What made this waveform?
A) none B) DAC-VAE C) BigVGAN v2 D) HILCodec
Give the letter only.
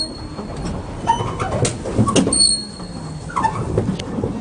A